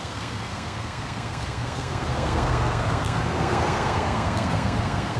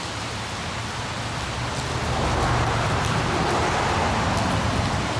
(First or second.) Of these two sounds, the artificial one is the first